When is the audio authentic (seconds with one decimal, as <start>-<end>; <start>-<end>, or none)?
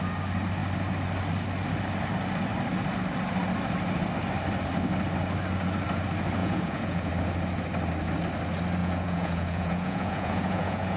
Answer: 0.0-6.4; 7.1-8.8